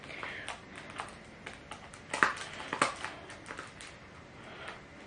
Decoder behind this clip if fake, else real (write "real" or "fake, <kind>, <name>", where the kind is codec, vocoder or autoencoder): real